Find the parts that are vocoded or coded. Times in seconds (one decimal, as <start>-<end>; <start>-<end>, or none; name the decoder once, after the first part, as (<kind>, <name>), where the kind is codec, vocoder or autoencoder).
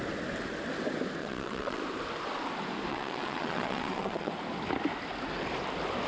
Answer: 1.2-1.8 (vocoder, WaveNeXt); 2.9-4.3